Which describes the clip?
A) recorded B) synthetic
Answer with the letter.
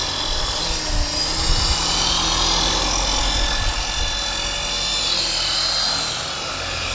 A